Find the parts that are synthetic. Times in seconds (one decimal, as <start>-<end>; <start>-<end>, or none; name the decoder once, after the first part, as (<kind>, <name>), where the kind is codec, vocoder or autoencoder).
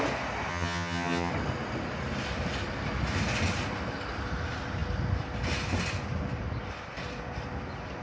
0.5-1.3 (vocoder, HiFi-GAN)